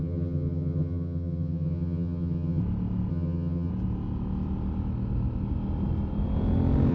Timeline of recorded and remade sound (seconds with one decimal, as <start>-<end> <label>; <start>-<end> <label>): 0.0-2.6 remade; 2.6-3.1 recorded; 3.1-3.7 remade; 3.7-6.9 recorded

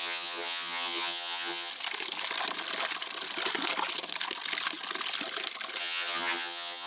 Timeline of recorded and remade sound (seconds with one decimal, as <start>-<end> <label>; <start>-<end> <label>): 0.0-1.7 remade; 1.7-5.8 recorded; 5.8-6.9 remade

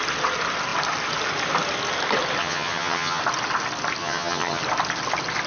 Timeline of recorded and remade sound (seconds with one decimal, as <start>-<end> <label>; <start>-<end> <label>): 0.0-2.4 recorded; 2.4-3.2 remade; 3.2-4.0 recorded; 4.0-4.6 remade; 4.6-5.5 recorded